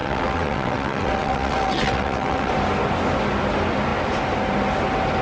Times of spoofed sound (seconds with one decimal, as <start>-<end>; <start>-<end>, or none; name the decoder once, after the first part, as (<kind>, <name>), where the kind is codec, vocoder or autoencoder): 0.0-2.5 (vocoder, WaveNeXt)